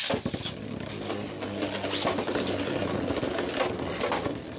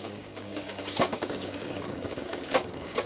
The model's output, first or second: second